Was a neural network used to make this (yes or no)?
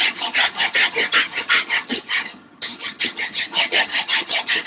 yes